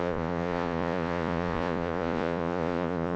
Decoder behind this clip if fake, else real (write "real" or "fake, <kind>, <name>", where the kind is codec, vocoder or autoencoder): fake, vocoder, Vocos